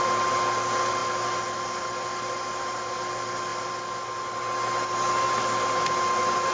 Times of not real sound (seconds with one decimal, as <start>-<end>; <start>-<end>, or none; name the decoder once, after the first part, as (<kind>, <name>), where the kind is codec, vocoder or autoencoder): none